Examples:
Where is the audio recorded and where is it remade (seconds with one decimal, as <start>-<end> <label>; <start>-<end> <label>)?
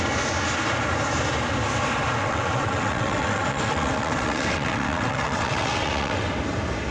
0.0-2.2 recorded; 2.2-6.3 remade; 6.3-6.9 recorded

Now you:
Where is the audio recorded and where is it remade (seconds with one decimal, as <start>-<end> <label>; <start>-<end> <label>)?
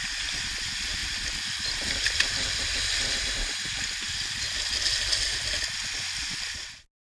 0.0-7.0 recorded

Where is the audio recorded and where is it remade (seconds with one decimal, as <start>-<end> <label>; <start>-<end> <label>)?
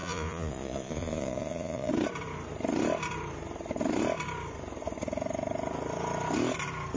0.0-1.9 remade; 1.9-7.0 recorded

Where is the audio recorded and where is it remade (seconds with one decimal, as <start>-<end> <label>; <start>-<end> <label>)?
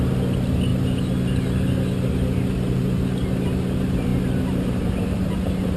0.0-5.8 recorded